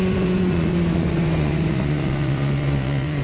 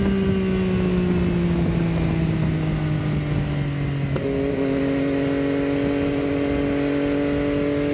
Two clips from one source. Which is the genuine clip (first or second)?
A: second